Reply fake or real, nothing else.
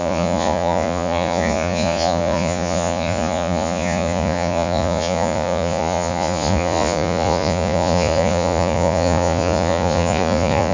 fake